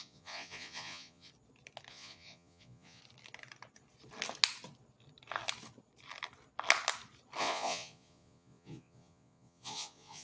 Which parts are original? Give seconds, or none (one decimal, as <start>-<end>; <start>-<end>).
1.3-1.9; 3.0-7.4